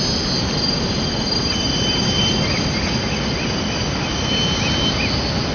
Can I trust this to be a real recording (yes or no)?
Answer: yes